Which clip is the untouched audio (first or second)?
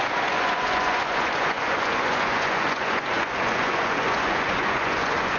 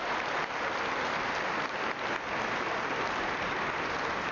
second